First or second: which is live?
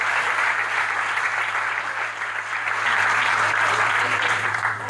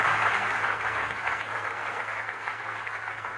first